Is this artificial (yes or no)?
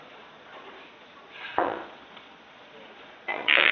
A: yes